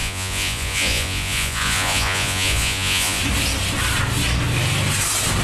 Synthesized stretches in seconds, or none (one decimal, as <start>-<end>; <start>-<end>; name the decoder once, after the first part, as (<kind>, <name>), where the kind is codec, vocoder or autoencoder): 0.0-3.2 (vocoder, Vocos)